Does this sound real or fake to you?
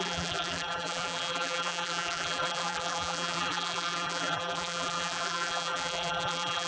fake